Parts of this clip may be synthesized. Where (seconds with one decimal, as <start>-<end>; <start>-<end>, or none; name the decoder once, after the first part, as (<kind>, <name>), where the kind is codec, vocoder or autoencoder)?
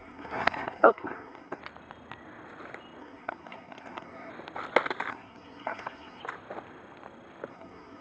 0.0-1.6 (codec, SNAC); 3.0-4.3; 5.1-6.2; 7.5-8.0